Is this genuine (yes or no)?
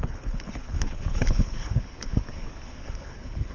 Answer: no